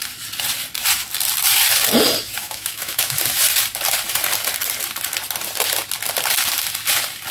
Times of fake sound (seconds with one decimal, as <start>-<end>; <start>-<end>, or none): 2.4-3.2